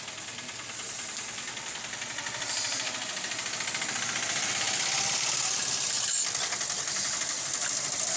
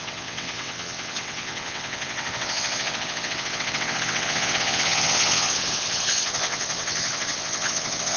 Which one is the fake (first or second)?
second